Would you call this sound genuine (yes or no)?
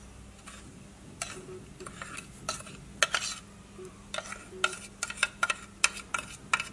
yes